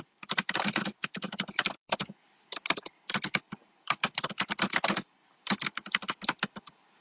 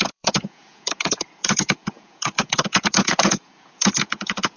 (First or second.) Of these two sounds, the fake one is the second